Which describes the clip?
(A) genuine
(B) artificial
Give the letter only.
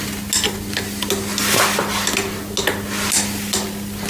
A